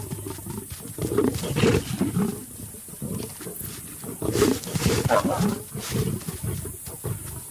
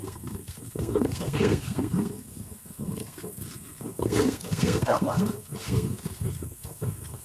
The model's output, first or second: second